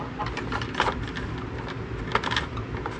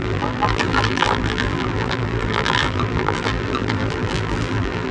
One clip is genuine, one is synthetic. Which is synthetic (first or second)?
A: second